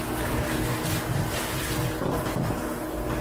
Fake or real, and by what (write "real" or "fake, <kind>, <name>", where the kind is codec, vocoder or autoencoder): real